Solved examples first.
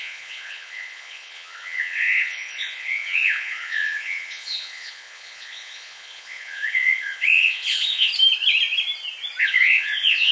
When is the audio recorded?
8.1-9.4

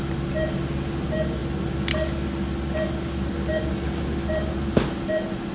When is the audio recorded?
0.0-5.5

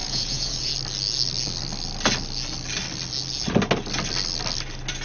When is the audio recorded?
0.7-5.0

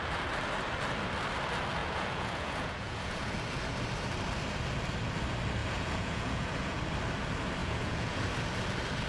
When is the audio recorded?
0.0-1.8; 3.3-5.6; 6.8-7.6; 8.2-9.1